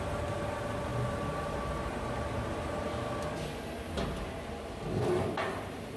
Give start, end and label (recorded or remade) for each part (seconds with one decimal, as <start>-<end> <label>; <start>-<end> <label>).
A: 0.0-6.0 recorded